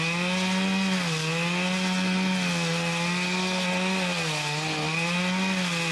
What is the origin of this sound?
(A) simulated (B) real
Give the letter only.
B